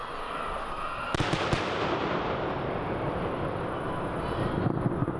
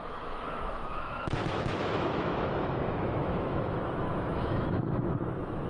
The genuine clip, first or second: first